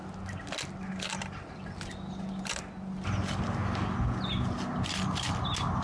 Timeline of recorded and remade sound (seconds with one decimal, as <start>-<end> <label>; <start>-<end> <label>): 0.0-5.8 recorded